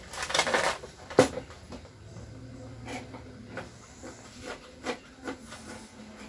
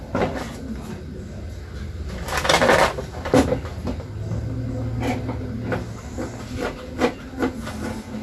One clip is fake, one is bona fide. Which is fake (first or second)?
first